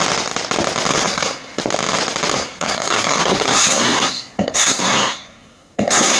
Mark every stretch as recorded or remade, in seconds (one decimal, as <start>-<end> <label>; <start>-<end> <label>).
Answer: 0.0-0.9 recorded; 0.9-1.6 remade; 1.6-2.3 recorded; 2.3-6.2 remade